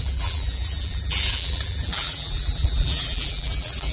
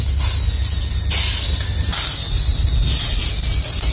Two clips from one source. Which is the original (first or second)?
second